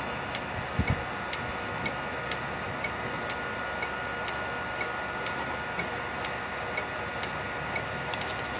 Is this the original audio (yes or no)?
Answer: yes